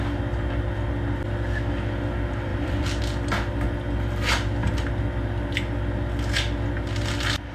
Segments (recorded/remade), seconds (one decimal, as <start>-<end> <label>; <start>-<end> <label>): 0.0-2.5 recorded; 2.5-3.0 remade; 3.0-7.5 recorded